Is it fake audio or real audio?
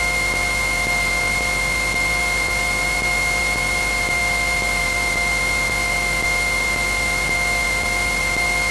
real